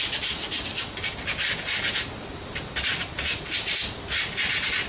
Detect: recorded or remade recorded